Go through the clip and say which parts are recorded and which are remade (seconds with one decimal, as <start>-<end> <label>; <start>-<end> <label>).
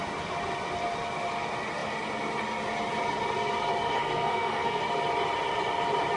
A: 0.0-4.0 recorded; 4.0-4.8 remade; 4.8-6.2 recorded